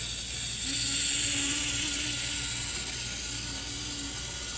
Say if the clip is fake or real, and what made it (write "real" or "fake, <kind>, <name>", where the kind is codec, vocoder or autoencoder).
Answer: real